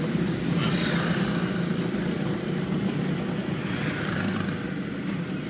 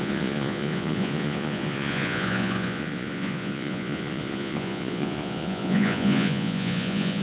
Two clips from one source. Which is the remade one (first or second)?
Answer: second